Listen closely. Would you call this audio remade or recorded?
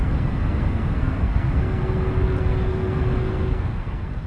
remade